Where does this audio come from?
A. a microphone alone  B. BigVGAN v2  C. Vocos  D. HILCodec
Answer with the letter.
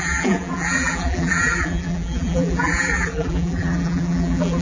B